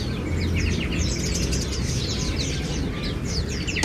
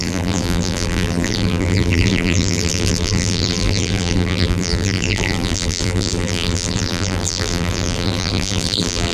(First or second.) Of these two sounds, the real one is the first